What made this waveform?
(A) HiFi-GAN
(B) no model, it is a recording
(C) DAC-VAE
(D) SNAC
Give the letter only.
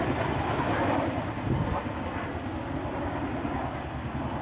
B